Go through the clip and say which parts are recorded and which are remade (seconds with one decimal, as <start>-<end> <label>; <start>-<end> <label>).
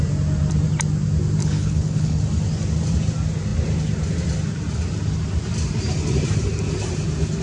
0.0-1.4 recorded; 1.4-2.2 remade; 2.2-7.4 recorded